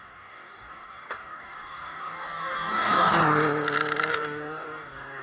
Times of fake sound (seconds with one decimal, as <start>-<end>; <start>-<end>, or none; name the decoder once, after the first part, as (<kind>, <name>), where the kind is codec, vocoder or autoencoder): 0.0-3.2 (codec, DAC); 4.1-5.2